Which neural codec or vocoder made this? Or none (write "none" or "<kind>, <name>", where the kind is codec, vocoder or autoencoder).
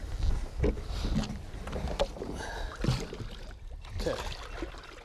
none